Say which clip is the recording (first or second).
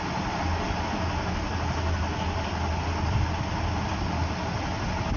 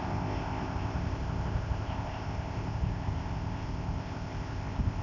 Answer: first